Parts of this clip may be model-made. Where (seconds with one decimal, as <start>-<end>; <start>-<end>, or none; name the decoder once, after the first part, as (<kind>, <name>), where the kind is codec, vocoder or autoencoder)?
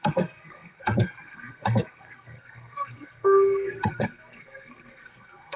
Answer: 0.0-5.6 (codec, SNAC)